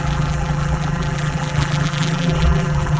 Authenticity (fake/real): fake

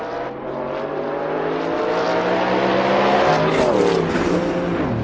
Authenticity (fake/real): real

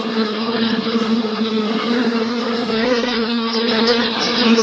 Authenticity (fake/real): fake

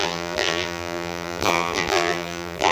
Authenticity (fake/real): fake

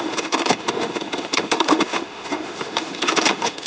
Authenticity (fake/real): fake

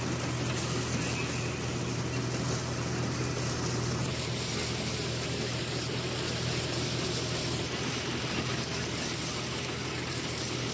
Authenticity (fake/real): real